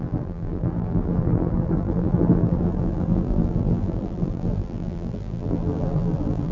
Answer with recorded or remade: remade